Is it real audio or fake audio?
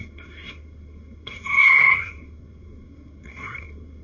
fake